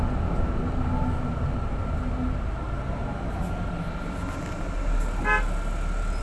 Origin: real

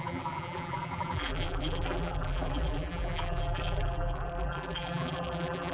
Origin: fake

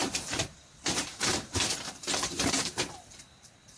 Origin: fake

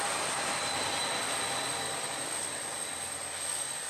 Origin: real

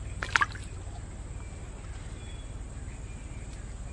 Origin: real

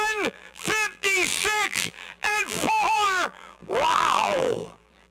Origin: fake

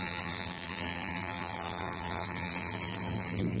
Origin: fake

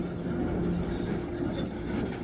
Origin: real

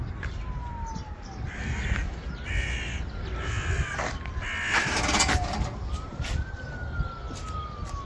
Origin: real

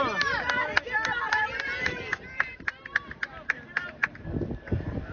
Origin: fake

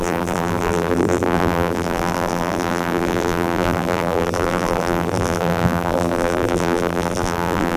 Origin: fake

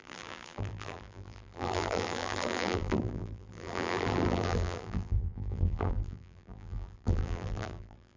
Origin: fake